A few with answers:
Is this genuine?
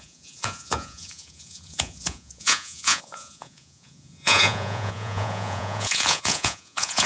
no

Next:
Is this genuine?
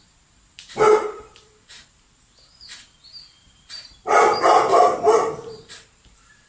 no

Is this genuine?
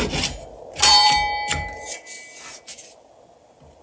yes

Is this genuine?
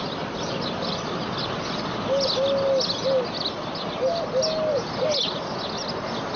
yes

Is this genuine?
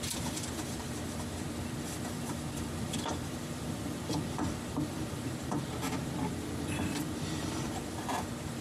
no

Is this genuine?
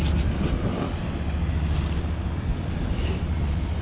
yes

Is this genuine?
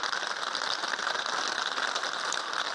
yes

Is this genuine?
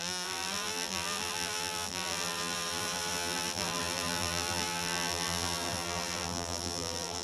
no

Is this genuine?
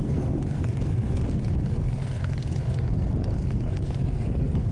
no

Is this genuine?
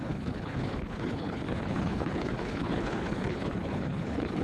no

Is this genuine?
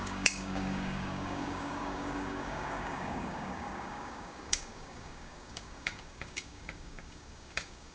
no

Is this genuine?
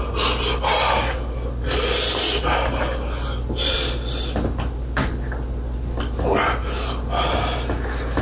yes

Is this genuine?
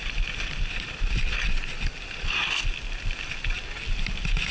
yes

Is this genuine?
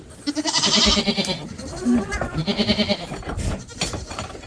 no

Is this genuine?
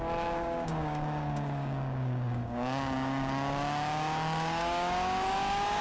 no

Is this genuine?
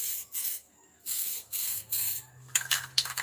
no